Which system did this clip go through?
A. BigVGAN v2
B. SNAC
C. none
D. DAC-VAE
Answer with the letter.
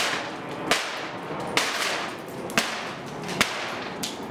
C